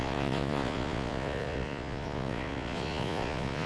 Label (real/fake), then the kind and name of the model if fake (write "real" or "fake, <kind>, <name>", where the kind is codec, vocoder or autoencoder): fake, vocoder, Vocos